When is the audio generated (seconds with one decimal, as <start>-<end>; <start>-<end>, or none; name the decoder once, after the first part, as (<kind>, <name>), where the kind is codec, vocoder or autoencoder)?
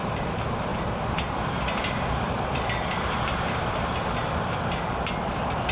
none